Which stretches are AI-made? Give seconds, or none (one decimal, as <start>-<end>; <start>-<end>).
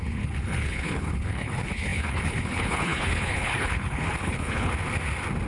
0.0-4.7